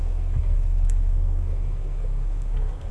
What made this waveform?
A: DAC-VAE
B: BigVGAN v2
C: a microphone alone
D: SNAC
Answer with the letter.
D